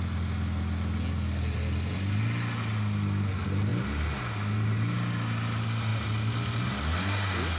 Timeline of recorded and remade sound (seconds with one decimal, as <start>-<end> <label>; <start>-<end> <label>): 0.0-7.6 recorded